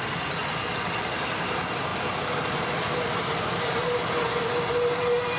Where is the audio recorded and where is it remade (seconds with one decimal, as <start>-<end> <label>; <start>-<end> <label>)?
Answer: 0.0-5.4 recorded